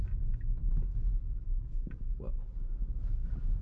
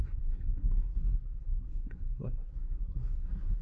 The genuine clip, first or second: first